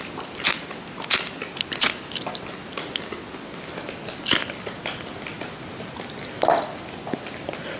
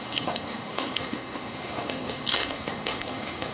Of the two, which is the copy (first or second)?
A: second